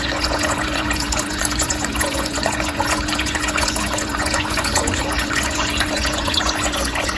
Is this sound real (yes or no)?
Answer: no